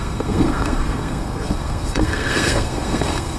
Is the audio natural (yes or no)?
no